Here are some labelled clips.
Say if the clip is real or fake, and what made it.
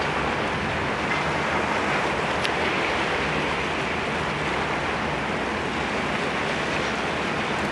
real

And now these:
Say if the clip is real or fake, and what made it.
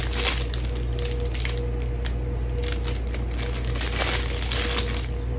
real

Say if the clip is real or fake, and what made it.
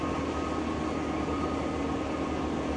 real